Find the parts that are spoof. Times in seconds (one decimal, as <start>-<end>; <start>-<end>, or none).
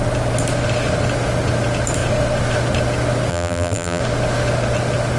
3.3-4.0